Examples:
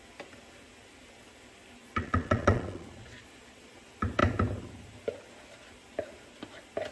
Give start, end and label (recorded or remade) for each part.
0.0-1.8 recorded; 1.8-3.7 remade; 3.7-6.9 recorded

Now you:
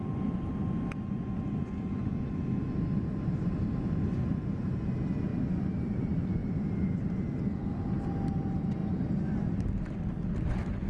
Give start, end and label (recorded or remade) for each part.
0.0-0.5 remade; 0.5-5.3 recorded; 5.3-6.0 remade; 6.0-6.4 recorded; 6.4-7.6 remade; 7.6-10.9 recorded

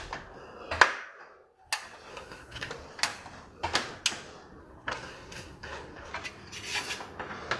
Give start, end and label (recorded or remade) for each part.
0.0-2.1 recorded; 2.1-2.7 remade; 2.7-4.6 recorded; 4.6-6.1 remade; 6.1-7.6 recorded

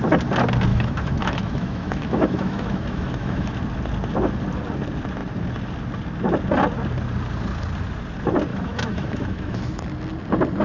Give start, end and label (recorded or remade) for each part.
0.0-0.7 recorded; 0.7-3.6 remade; 3.6-8.5 recorded; 8.5-9.7 remade; 9.7-10.6 recorded

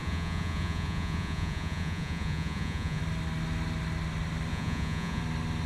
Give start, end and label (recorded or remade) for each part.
0.0-3.0 remade; 3.0-4.5 recorded; 4.5-5.2 remade; 5.2-5.7 recorded